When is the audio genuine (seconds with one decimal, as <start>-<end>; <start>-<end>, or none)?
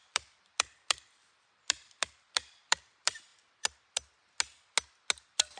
3.3-5.6